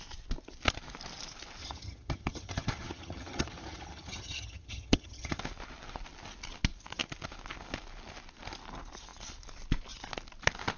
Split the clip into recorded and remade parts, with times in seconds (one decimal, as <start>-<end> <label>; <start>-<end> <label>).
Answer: 0.0-1.6 recorded; 1.6-5.4 remade; 5.4-10.8 recorded